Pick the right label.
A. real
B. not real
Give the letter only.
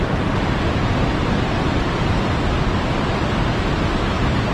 A